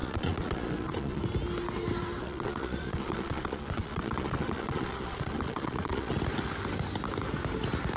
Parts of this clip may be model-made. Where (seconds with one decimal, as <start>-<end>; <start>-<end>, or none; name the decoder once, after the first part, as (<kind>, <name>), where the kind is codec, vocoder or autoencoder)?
0.0-1.2 (vocoder, Vocos); 2.2-6.2